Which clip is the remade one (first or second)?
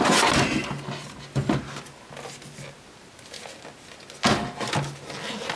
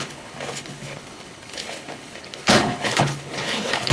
second